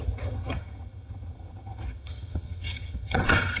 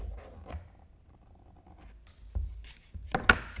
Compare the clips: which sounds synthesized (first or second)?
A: first